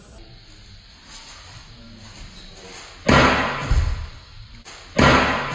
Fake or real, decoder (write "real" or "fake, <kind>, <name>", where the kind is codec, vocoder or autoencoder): real